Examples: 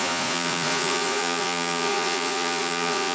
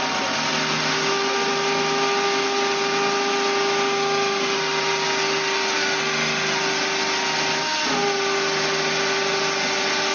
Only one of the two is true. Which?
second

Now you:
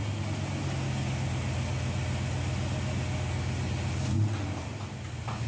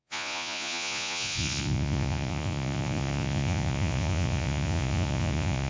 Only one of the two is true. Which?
first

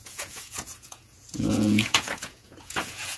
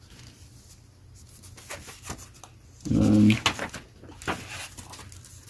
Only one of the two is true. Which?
second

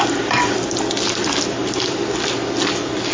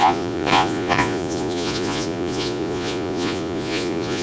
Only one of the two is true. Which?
first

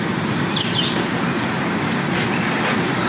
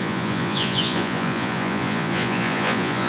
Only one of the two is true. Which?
first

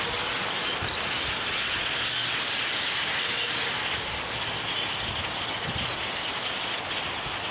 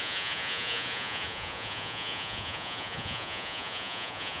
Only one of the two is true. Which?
first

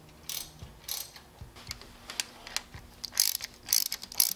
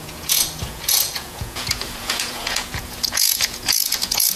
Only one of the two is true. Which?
first